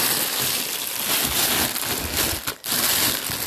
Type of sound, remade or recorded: recorded